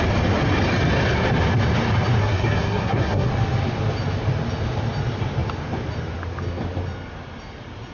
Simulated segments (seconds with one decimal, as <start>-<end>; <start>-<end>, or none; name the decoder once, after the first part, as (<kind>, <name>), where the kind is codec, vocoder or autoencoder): 2.2-3.3 (codec, SNAC)